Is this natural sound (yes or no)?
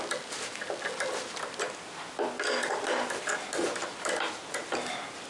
yes